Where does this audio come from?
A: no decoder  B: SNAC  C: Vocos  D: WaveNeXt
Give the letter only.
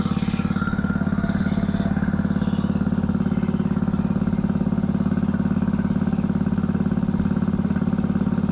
A